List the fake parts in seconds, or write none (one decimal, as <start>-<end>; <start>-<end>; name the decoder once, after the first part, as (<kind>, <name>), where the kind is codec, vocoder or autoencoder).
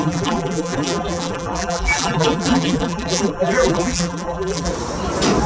0.0-4.7 (vocoder, BigVGAN v2)